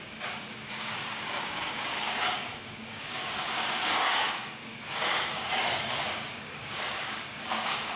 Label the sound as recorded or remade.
remade